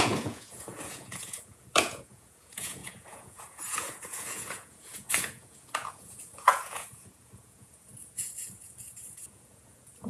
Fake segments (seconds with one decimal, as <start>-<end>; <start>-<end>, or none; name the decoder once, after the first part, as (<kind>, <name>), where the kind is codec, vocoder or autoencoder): 0.0-10.1 (vocoder, Vocos)